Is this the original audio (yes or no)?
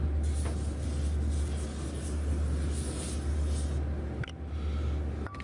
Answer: yes